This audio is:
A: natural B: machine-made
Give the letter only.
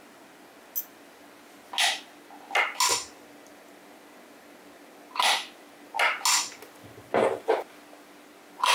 A